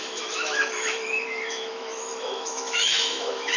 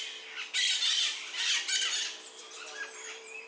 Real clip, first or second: second